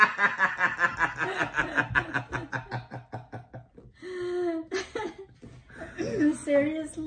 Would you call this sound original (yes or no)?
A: yes